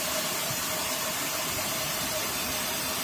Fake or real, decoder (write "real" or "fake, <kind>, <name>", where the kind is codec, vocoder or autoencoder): real